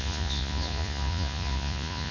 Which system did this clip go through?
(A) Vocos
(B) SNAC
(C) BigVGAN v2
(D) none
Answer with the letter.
A